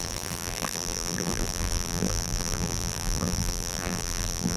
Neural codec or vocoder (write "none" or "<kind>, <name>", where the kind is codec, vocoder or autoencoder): vocoder, BigVGAN v2